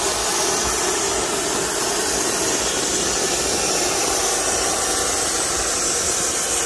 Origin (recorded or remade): recorded